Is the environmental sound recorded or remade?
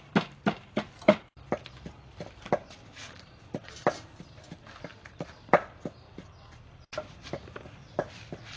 recorded